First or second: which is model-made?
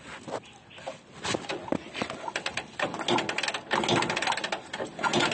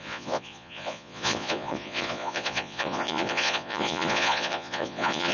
second